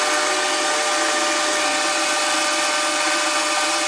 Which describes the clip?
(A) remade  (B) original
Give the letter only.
B